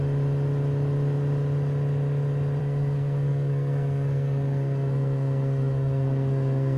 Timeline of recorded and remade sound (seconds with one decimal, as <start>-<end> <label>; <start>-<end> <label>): 0.0-2.6 recorded; 2.6-6.8 remade